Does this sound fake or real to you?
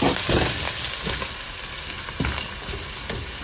real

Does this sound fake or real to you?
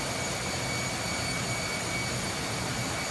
real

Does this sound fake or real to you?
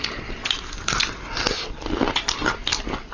real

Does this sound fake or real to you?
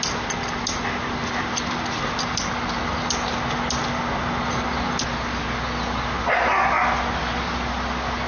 real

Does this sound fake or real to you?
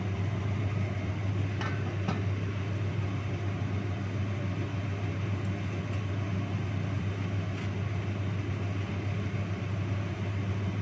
real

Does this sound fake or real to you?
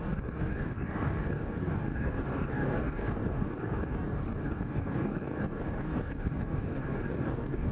fake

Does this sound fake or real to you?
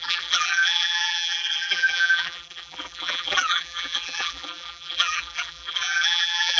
fake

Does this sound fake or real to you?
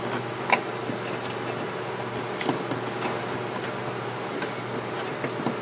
real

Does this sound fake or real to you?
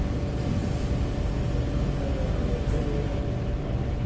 real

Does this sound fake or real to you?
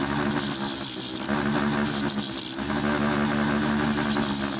real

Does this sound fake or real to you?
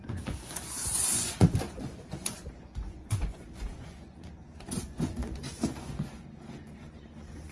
fake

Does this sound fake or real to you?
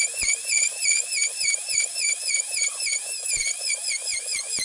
fake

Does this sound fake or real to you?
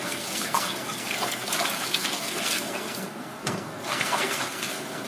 fake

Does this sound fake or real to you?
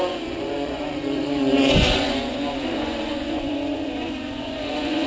fake